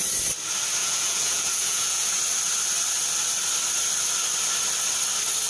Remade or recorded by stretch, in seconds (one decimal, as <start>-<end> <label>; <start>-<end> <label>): 0.0-0.8 recorded; 0.8-2.1 remade; 2.1-5.5 recorded